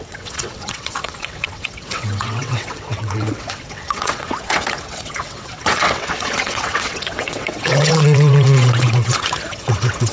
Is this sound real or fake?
fake